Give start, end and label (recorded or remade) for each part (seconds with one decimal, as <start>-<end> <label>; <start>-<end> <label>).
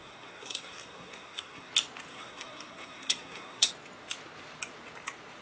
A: 0.0-1.7 remade; 1.7-2.1 recorded; 2.1-3.7 remade; 3.7-5.4 recorded